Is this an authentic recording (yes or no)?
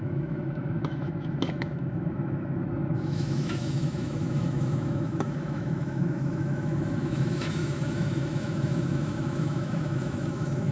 no